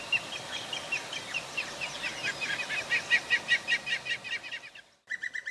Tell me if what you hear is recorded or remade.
recorded